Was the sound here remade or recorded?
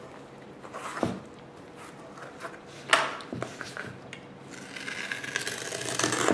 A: recorded